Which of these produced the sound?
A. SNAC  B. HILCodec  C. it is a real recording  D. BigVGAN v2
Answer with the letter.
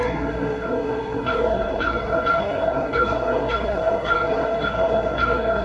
A